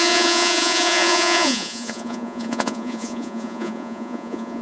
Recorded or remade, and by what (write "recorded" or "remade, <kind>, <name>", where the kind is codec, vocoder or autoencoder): remade, vocoder, Vocos